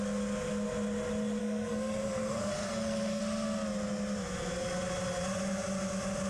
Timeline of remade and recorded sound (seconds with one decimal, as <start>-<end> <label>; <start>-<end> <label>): 0.0-1.4 recorded; 1.4-3.2 remade; 3.2-6.3 recorded